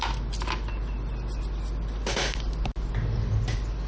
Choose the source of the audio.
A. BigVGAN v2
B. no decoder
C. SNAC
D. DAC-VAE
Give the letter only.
B